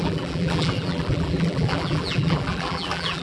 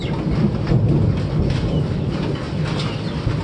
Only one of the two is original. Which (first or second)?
second